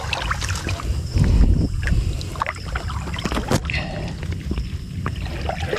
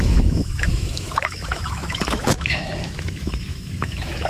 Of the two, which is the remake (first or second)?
second